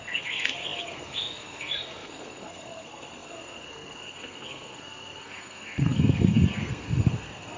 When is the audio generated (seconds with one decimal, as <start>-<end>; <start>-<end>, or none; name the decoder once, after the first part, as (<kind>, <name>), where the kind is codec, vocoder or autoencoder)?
0.0-7.6 (codec, SNAC)